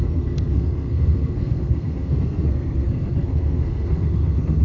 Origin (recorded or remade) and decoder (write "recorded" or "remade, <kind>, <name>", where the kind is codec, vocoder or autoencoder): remade, codec, SNAC